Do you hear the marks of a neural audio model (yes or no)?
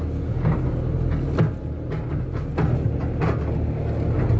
no